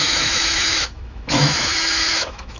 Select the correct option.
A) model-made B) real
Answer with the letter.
A